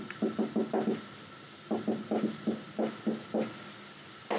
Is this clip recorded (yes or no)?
yes